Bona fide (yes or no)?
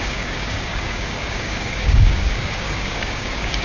no